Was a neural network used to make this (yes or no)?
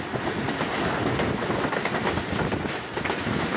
no